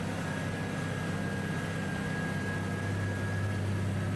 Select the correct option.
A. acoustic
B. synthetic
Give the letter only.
A